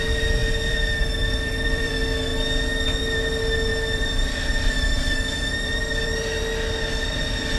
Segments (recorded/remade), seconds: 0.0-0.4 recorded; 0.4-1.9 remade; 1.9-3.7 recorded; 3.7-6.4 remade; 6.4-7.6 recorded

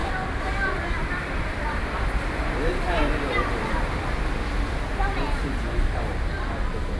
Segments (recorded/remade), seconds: 0.0-3.8 remade; 3.8-7.0 recorded

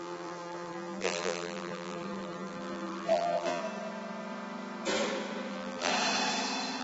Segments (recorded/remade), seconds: 0.0-3.6 remade; 3.6-5.5 recorded; 5.5-5.9 remade; 5.9-6.8 recorded

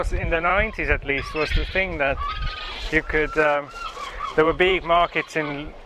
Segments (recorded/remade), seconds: 0.0-0.5 remade; 0.5-1.1 recorded; 1.1-5.9 remade

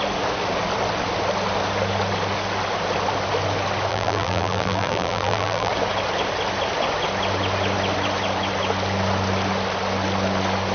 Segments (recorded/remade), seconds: 0.0-3.9 recorded; 3.9-5.7 remade; 5.7-10.7 recorded

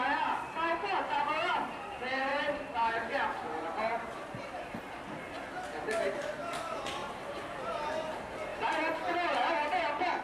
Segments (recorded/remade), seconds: 0.0-2.3 recorded; 2.3-4.8 remade; 4.8-7.0 recorded; 7.0-7.7 remade; 7.7-10.2 recorded

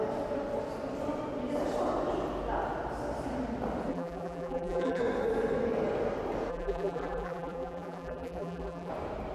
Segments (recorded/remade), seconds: 0.0-3.9 recorded; 3.9-5.0 remade; 5.0-6.5 recorded; 6.5-8.9 remade; 8.9-9.3 recorded